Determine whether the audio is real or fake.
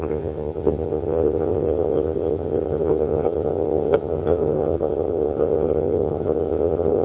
fake